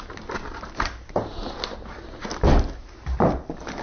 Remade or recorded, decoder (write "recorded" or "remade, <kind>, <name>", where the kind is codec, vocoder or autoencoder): recorded